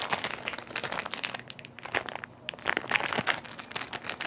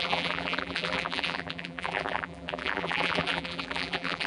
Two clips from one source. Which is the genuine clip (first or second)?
first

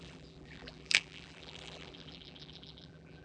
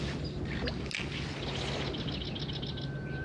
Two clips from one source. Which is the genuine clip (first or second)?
second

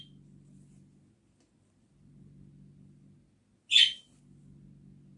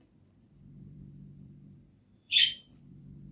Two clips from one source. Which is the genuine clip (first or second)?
first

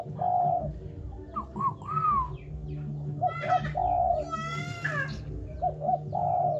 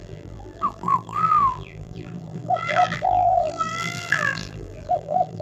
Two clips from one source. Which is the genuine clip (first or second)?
first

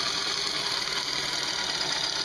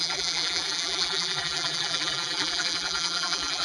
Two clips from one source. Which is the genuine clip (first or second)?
first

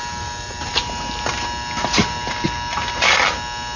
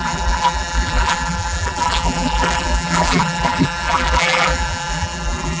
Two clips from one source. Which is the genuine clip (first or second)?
first